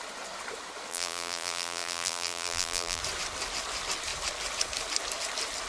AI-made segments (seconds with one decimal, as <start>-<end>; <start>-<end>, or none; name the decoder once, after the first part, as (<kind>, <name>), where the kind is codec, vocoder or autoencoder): 0.9-3.0 (vocoder, BigVGAN v2)